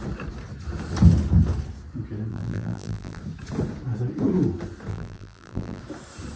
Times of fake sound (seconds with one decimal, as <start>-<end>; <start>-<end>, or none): 2.3-3.2; 4.9-5.8